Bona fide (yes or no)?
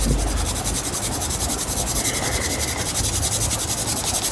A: yes